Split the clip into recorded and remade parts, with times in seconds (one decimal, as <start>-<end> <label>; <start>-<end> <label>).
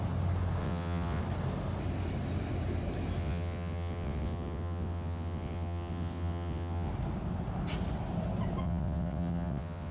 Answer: 0.0-0.6 recorded; 0.6-1.2 remade; 1.2-3.2 recorded; 3.2-6.9 remade; 6.9-8.6 recorded; 8.6-9.9 remade